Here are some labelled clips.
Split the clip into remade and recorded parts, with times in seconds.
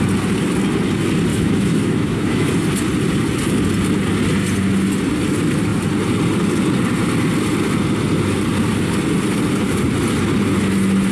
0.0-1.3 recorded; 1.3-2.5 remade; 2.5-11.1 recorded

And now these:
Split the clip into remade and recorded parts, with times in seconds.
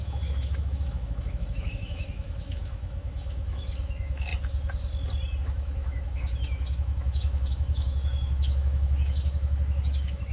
0.0-4.3 remade; 4.3-5.4 recorded; 5.4-10.3 remade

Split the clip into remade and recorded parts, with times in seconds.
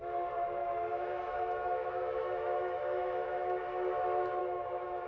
0.0-0.6 recorded; 0.6-3.6 remade; 3.6-4.4 recorded; 4.4-5.1 remade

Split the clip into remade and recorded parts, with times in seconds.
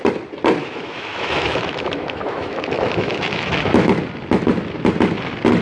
0.0-0.6 recorded; 0.6-3.9 remade; 3.9-5.6 recorded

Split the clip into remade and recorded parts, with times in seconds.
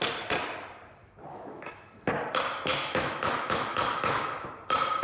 0.0-1.0 recorded; 1.0-1.9 remade; 1.9-2.7 recorded; 2.7-4.5 remade; 4.5-5.0 recorded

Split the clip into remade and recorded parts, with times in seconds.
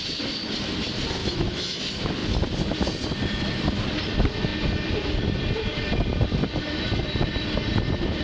0.0-1.2 recorded; 1.2-1.8 remade; 1.8-8.2 recorded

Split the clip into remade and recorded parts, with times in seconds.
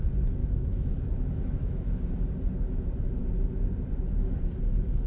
0.0-0.4 recorded; 0.4-2.0 remade; 2.0-5.1 recorded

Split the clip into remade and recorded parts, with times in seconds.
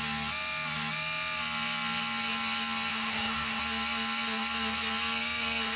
0.0-2.9 recorded; 2.9-3.6 remade; 3.6-5.8 recorded